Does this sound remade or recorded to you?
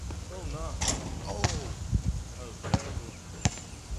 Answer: recorded